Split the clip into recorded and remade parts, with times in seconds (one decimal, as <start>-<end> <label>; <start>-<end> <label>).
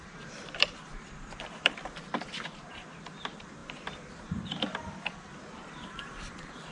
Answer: 0.0-6.7 remade